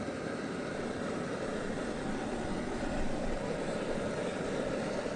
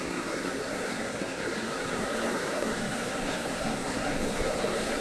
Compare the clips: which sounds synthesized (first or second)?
second